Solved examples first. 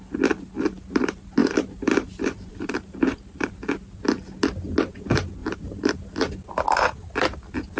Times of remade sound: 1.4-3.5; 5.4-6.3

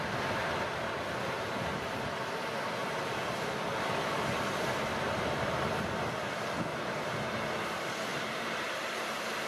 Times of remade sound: 1.2-1.8; 2.8-5.9; 6.7-7.3; 8.1-8.8

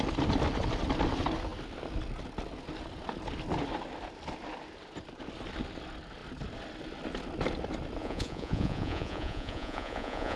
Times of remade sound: 8.0-10.4

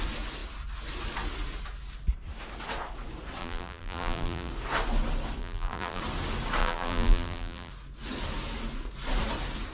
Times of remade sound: 3.4-4.5; 5.4-6.0; 6.6-7.7

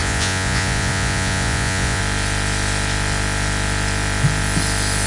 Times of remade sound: 0.0-2.0